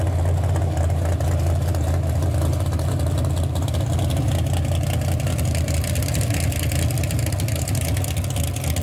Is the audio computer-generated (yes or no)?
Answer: no